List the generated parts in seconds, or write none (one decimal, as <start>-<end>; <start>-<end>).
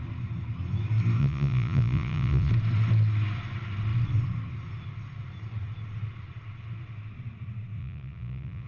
1.2-2.5; 7.8-8.7